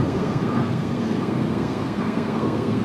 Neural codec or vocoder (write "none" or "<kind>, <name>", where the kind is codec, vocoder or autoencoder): codec, SNAC